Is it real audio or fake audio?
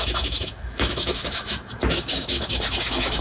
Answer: fake